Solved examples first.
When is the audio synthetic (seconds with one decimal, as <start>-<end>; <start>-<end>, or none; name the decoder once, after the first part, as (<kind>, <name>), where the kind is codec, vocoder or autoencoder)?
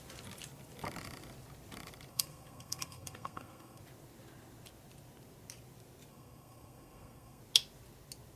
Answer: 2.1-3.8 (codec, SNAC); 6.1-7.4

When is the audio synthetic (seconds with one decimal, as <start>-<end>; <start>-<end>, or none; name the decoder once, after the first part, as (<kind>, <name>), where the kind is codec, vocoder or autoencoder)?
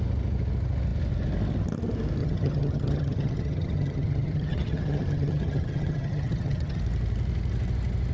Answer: 2.2-6.8 (vocoder, HiFi-GAN)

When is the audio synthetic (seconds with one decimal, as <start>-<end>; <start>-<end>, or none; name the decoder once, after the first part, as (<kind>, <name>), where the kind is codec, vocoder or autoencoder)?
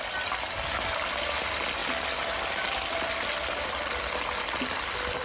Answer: none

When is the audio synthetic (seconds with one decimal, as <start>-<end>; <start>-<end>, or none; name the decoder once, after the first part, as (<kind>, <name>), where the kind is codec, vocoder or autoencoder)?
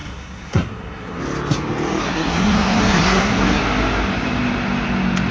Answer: 0.0-1.2 (codec, SNAC); 2.0-3.6